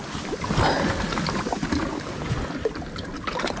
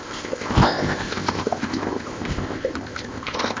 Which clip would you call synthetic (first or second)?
second